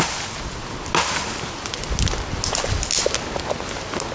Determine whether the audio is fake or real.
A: real